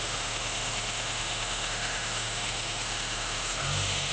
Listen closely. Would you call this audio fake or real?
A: fake